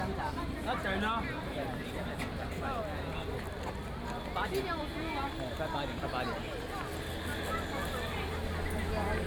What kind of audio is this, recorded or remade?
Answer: recorded